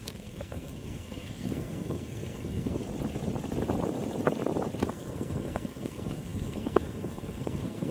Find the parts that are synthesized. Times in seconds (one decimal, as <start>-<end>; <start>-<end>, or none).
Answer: 0.0-2.8; 4.9-7.9